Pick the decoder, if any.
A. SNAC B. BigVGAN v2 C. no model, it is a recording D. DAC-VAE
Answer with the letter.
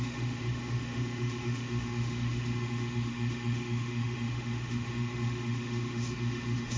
D